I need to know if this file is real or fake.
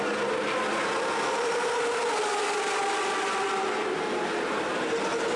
real